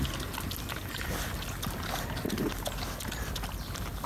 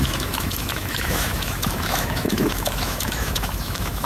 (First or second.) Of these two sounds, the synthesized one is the second